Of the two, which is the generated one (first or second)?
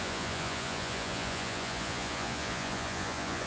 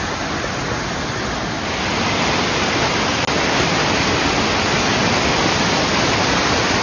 first